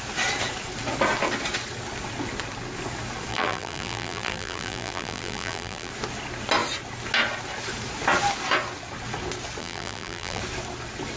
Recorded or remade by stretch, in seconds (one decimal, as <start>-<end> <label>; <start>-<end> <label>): 0.0-3.3 recorded; 3.3-5.9 remade; 5.9-9.6 recorded; 9.6-10.4 remade; 10.4-11.2 recorded

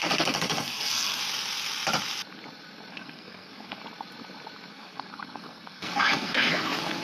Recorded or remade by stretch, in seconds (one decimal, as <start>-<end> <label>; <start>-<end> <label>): 0.0-1.2 remade; 1.2-2.9 recorded; 2.9-3.8 remade; 3.8-4.7 recorded; 4.7-7.0 remade

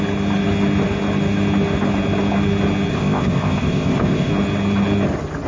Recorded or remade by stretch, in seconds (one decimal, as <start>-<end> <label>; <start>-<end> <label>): 0.0-2.9 recorded; 2.9-4.3 remade; 4.3-5.5 recorded

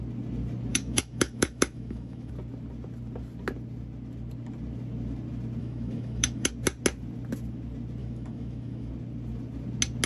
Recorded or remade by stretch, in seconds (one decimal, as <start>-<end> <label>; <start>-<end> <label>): 0.0-0.7 recorded; 0.7-2.3 remade; 2.3-5.6 recorded; 5.6-6.5 remade; 6.5-8.0 recorded; 8.0-8.9 remade; 8.9-10.1 recorded

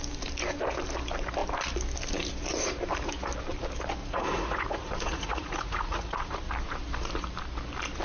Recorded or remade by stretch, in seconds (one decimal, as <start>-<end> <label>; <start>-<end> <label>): 0.0-4.0 recorded; 4.0-6.5 remade; 6.5-8.0 recorded

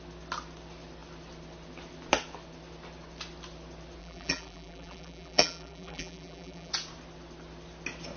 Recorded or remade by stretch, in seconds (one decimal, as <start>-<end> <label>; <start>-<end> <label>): 0.0-4.0 recorded; 4.0-6.7 remade; 6.7-8.2 recorded